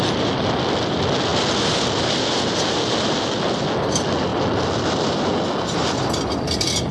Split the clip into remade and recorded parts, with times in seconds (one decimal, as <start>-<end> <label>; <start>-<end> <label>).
0.0-6.9 recorded